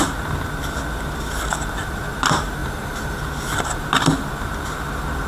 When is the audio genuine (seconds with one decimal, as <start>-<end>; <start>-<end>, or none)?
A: 0.0-2.6; 3.2-5.3